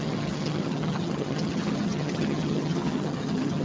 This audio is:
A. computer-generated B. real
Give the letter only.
A